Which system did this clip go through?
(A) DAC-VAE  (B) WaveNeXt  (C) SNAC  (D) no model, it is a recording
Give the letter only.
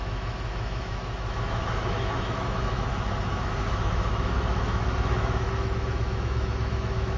A